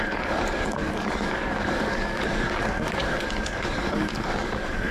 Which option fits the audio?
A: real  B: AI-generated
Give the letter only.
B